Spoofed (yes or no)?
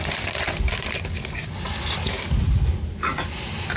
no